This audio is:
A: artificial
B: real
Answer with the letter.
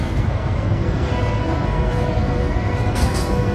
A